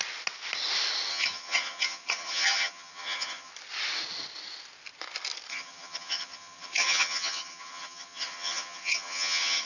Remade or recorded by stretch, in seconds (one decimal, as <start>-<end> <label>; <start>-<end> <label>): 0.0-1.1 recorded; 1.1-3.5 remade; 3.5-5.5 recorded; 5.5-9.7 remade